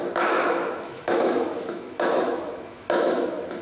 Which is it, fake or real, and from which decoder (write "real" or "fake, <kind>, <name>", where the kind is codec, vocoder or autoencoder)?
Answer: fake, autoencoder, DAC-VAE